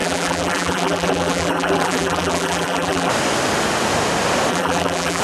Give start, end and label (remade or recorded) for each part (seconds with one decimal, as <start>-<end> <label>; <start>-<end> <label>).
0.0-3.1 remade; 3.1-4.5 recorded; 4.5-5.2 remade